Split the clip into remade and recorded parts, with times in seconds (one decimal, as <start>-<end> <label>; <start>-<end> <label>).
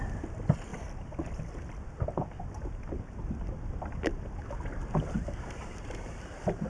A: 0.0-6.7 recorded